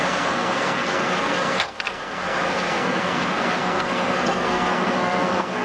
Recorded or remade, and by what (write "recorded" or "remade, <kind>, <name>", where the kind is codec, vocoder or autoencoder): remade, codec, SNAC